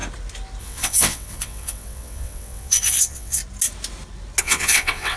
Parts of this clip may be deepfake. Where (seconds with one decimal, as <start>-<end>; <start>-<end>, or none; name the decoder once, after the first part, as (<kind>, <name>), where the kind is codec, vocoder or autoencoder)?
0.6-3.4 (vocoder, WaveNeXt); 4.4-5.2